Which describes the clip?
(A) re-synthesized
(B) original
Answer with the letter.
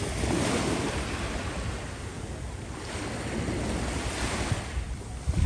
B